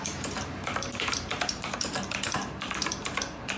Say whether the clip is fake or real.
fake